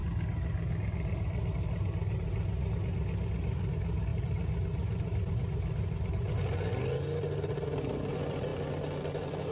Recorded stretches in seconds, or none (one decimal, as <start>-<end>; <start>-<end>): 0.0-9.5